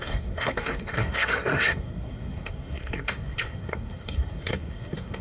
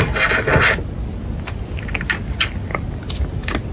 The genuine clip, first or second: second